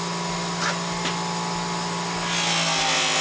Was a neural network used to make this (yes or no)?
no